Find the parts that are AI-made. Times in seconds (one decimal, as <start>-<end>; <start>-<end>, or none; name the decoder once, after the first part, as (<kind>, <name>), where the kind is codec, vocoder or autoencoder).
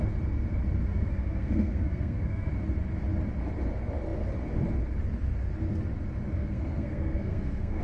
0.9-2.5 (codec, SNAC); 6.4-7.8